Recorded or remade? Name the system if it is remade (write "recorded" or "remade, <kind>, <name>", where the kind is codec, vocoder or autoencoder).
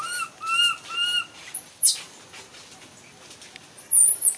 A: recorded